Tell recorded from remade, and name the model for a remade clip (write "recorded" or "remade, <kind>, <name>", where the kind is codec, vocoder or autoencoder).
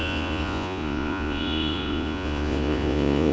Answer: remade, vocoder, Vocos